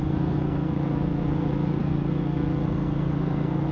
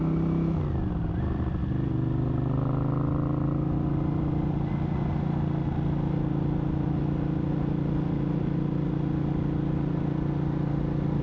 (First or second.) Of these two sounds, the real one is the second